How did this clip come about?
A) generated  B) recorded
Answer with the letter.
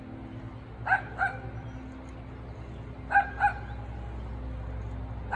B